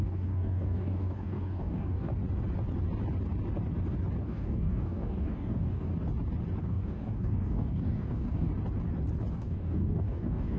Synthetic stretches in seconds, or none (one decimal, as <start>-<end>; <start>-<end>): 0.0-2.1; 4.2-5.9; 6.6-8.5; 9.3-10.6